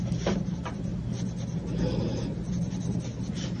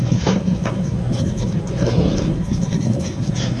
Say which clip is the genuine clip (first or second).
first